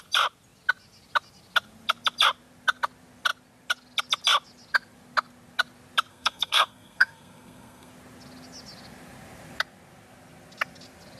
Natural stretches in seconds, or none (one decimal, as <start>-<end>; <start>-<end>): 0.0-6.1; 7.9-11.2